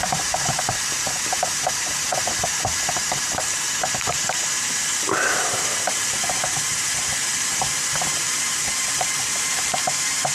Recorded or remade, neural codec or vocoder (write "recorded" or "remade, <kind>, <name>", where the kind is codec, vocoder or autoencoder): remade, vocoder, BigVGAN v2